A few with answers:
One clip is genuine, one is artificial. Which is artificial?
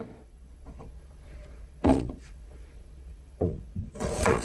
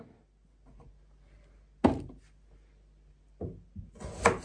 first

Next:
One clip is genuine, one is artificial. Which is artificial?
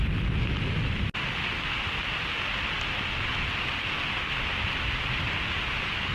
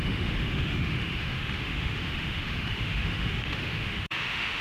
second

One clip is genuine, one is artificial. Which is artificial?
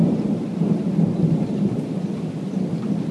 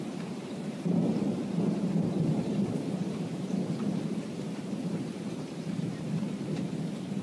second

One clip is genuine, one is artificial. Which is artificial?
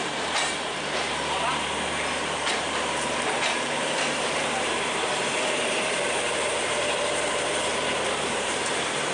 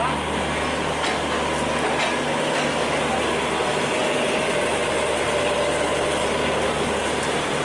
first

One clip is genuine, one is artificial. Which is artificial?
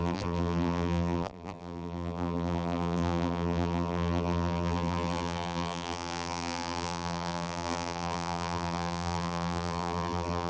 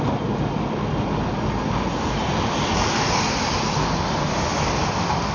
first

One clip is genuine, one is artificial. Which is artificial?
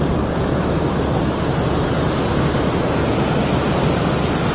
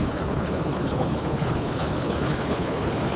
second